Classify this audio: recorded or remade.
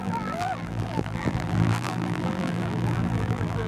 remade